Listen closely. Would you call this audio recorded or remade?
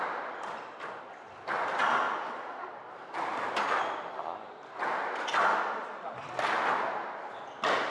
recorded